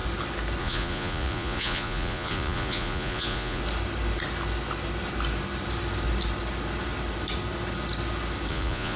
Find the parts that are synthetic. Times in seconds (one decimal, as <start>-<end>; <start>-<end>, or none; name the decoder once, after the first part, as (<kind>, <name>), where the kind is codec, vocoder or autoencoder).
0.6-3.6 (vocoder, Vocos); 8.5-9.0